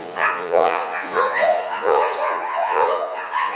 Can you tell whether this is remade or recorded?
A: remade